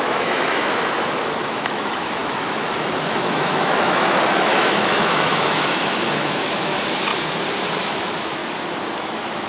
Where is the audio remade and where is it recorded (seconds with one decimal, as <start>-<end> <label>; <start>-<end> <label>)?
0.0-7.1 remade; 7.1-7.8 recorded; 7.8-8.4 remade; 8.4-9.0 recorded; 9.0-9.5 remade